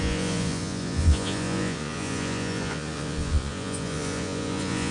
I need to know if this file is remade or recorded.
remade